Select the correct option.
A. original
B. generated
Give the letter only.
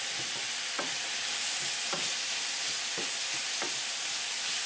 A